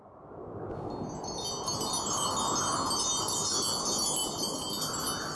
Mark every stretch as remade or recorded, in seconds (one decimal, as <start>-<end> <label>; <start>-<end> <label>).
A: 0.0-5.4 recorded